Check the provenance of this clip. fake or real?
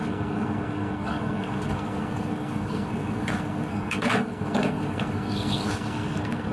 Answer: fake